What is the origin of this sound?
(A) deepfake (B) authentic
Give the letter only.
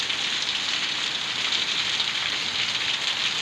B